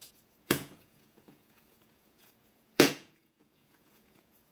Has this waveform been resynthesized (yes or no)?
yes